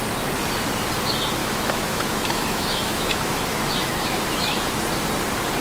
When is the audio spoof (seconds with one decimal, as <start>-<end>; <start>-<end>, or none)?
1.4-4.8

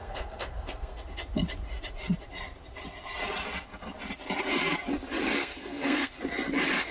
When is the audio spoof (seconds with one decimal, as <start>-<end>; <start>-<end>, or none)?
0.0-1.0; 5.4-6.1

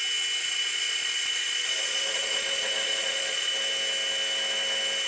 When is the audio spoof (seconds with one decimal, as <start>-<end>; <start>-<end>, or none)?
0.4-3.5

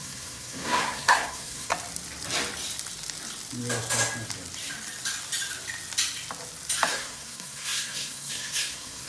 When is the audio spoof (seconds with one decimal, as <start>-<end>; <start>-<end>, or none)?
0.0-1.7; 6.9-9.1